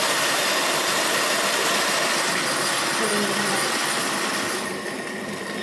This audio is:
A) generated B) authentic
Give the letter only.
B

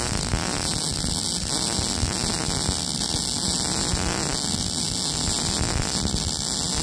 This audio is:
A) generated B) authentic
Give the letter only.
B